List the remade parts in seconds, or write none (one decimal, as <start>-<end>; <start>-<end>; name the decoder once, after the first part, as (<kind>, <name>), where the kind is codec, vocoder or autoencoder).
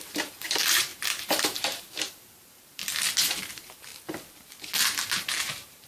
0.0-2.8 (vocoder, BigVGAN v2); 3.4-3.9; 5.3-5.9